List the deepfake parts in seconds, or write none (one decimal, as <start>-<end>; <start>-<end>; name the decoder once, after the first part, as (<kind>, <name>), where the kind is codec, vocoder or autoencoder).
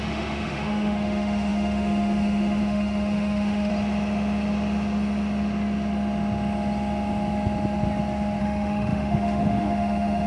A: 0.0-3.7 (autoencoder, DAC-VAE); 8.4-10.3